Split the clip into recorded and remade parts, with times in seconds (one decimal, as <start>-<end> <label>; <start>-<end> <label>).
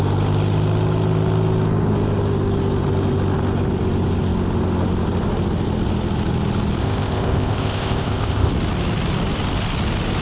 0.0-6.8 recorded; 6.8-8.5 remade; 8.5-10.2 recorded